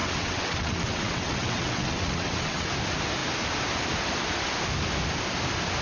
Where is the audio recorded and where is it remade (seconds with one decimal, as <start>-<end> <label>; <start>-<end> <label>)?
0.0-2.7 remade; 2.7-5.8 recorded